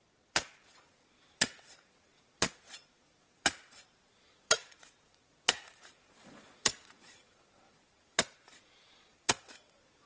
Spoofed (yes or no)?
yes